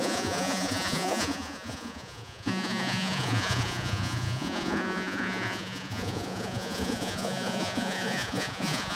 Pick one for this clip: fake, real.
fake